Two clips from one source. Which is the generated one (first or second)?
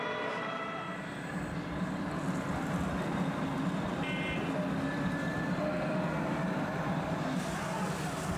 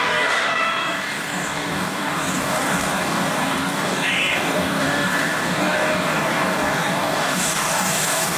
second